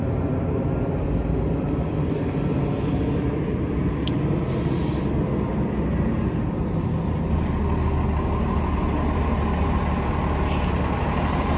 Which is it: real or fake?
real